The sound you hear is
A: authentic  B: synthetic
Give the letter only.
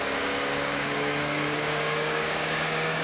B